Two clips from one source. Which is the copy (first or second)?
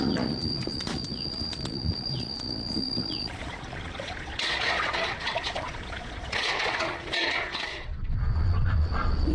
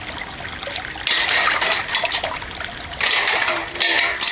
first